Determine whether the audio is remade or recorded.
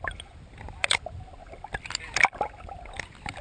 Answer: recorded